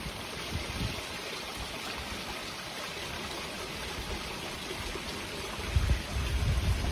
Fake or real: real